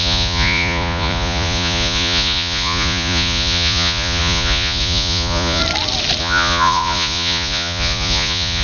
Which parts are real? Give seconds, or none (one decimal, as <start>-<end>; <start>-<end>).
5.6-6.2